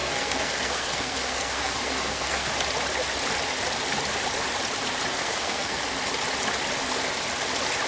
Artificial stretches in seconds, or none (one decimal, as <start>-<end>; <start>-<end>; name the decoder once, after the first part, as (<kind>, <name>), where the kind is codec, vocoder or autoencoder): 0.0-2.5 (codec, SNAC); 5.1-5.8